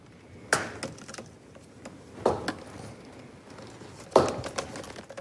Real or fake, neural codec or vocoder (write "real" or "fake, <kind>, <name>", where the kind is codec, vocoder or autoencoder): real